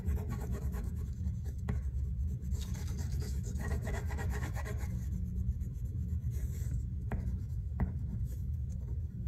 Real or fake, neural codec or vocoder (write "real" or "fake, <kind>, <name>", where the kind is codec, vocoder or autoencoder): fake, codec, DAC